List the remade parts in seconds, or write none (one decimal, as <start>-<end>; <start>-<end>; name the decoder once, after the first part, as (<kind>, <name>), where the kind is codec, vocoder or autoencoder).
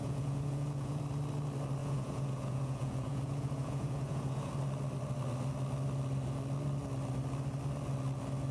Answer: 0.0-1.0 (vocoder, Vocos); 1.8-4.5